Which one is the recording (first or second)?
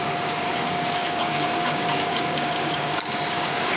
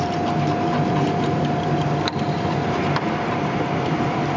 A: second